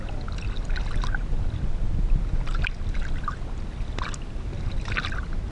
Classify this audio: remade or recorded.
recorded